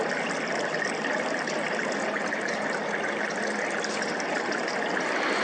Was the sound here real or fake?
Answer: real